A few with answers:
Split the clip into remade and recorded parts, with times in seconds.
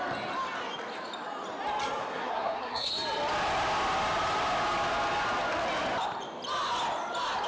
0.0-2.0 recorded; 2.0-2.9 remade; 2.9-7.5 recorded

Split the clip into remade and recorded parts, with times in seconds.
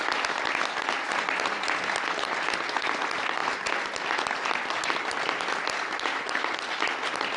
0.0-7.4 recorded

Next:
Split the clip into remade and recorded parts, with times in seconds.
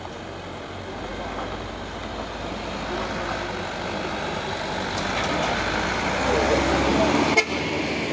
0.0-8.1 recorded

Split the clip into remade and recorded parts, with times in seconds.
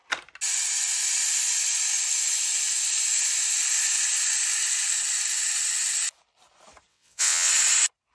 0.0-6.9 recorded; 6.9-7.5 remade; 7.5-8.1 recorded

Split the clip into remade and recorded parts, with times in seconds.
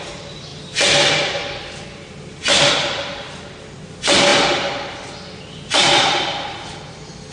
0.0-7.3 recorded